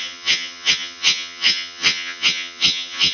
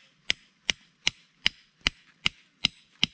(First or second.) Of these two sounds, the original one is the second